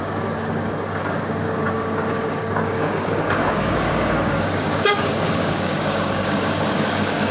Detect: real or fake fake